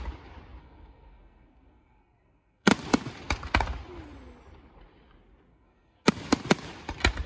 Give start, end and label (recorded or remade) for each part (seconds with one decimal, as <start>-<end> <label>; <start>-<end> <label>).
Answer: 0.0-0.6 recorded; 0.6-2.7 remade; 2.7-5.5 recorded; 5.5-6.1 remade; 6.1-7.3 recorded